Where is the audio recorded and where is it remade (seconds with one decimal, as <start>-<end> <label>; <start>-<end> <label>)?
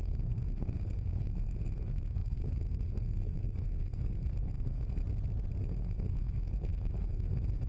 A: 0.0-5.0 remade; 5.0-5.6 recorded; 5.6-7.7 remade